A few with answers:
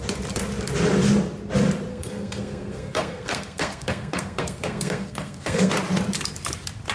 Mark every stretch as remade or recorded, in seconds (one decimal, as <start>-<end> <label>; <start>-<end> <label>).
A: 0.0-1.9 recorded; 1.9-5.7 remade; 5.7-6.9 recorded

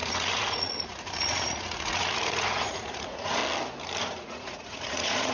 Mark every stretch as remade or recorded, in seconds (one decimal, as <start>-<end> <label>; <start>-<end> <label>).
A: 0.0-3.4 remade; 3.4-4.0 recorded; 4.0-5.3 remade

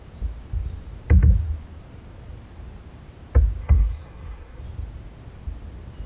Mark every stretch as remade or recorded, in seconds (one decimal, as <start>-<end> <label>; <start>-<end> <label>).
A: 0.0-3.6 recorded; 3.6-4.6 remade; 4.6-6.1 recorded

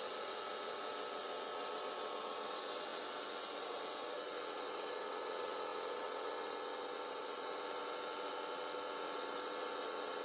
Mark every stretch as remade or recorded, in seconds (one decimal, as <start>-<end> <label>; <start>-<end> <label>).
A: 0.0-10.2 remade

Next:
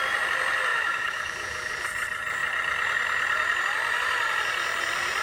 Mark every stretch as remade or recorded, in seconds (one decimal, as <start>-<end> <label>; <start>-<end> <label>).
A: 0.0-0.7 recorded; 0.7-1.3 remade; 1.3-5.2 recorded